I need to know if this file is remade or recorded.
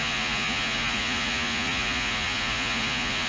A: remade